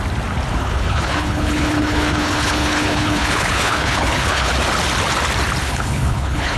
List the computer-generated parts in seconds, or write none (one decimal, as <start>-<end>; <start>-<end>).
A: 0.5-4.5; 5.6-6.6